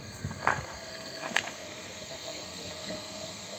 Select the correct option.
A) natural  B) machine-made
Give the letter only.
B